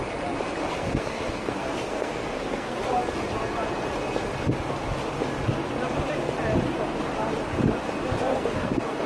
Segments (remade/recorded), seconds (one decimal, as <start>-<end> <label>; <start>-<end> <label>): 0.0-0.7 recorded; 0.7-2.8 remade; 2.8-8.3 recorded; 8.3-9.1 remade